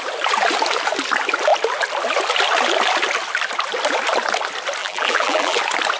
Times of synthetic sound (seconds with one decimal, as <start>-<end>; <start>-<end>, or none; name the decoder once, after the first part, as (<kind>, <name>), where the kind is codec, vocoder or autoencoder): 4.8-5.6 (vocoder, BigVGAN v2)